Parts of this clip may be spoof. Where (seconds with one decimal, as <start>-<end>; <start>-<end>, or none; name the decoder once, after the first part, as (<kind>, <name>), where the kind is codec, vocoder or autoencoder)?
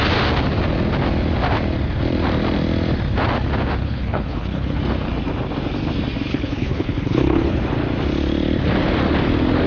3.8-4.8 (codec, HILCodec); 6.3-7.6